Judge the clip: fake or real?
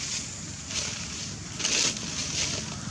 real